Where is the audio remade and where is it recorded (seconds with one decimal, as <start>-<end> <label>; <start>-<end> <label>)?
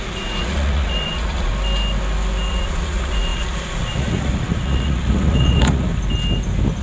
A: 0.0-1.5 remade; 1.5-2.5 recorded; 2.5-5.9 remade; 5.9-6.8 recorded